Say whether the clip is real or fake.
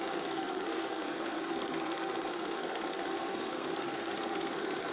fake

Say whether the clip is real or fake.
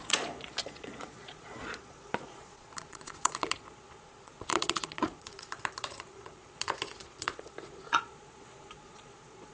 fake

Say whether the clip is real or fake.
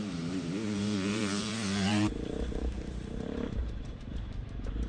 fake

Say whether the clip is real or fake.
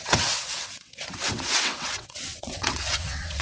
fake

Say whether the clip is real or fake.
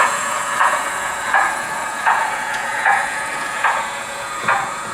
fake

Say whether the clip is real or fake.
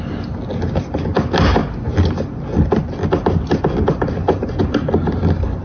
real